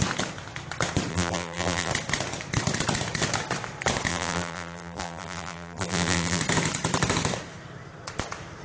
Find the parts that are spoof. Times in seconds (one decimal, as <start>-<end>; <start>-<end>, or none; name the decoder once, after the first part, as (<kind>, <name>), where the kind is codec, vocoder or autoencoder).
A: 1.1-1.9 (vocoder, BigVGAN v2); 4.1-6.4